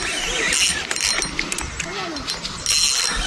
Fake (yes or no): no